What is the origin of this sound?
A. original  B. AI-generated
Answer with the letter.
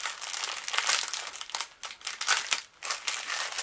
A